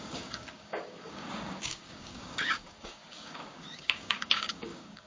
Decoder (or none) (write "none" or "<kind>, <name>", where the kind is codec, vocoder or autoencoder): codec, DAC